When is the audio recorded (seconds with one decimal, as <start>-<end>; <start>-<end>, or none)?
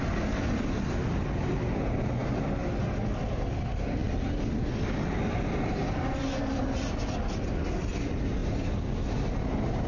0.0-9.9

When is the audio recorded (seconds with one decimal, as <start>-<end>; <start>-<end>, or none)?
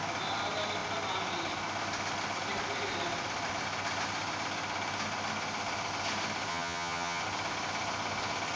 0.0-6.5; 7.2-8.6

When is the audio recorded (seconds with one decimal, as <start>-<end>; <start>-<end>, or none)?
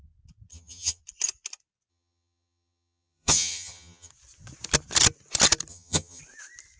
0.0-0.5; 1.0-1.9; 4.1-5.7; 6.2-6.8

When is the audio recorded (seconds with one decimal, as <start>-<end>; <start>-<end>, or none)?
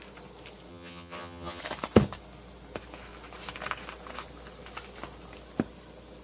0.0-0.7; 1.6-6.2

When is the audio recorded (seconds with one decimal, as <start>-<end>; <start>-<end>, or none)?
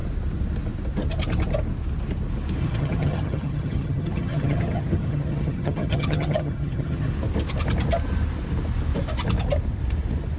0.0-2.6; 7.1-10.4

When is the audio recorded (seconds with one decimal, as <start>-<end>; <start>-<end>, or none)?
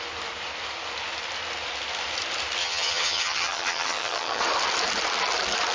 0.0-2.6; 4.4-5.7